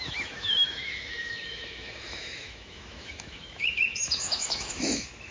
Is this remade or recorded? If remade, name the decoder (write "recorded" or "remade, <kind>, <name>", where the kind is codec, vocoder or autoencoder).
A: remade, autoencoder, DAC-VAE